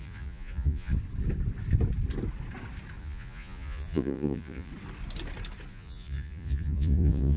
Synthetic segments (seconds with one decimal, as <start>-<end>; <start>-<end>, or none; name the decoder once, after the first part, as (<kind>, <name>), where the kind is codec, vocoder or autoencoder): 0.0-0.9 (vocoder, Vocos); 3.0-4.7; 5.7-7.4